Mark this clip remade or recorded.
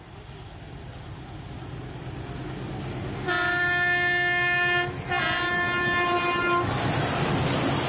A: recorded